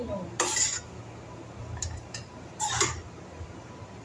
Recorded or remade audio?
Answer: recorded